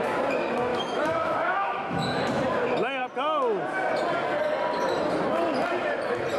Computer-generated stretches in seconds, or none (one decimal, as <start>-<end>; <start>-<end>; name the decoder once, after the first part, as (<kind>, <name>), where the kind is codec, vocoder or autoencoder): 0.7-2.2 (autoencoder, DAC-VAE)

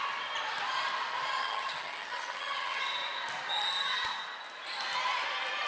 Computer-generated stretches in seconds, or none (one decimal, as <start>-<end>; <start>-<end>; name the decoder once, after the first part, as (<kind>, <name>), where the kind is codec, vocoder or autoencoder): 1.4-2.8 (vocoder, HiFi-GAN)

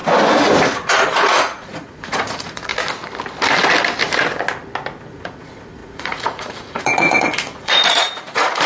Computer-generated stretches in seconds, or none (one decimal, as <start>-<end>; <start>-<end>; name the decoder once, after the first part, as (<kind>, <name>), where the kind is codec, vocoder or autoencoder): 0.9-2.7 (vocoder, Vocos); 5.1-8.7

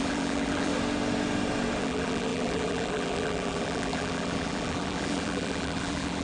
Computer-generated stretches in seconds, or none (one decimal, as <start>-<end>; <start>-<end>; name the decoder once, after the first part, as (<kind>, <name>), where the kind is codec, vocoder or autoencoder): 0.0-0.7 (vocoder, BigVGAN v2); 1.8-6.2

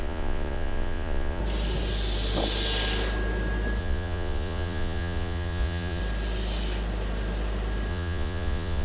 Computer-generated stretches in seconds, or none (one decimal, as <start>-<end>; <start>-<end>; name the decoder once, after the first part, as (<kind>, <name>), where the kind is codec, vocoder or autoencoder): 0.0-1.4 (vocoder, Vocos); 3.8-6.0; 7.9-8.8